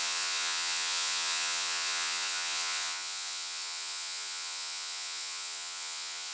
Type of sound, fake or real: fake